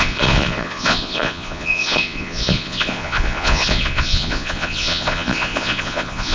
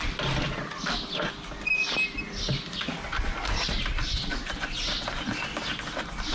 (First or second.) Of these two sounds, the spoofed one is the first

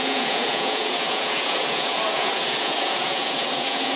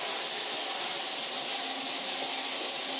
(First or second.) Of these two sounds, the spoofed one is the first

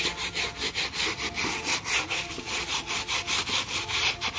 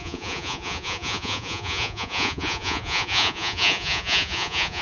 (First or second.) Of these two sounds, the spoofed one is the second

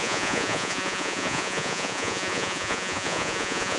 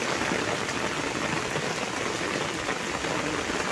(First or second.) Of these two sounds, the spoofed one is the first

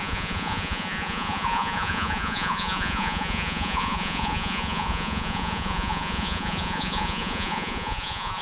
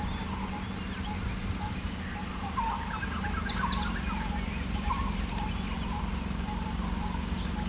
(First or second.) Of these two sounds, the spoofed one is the first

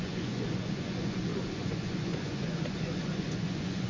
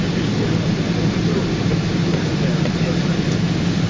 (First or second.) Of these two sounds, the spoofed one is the first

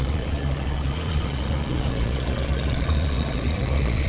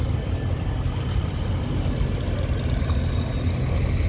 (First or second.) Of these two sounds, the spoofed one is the first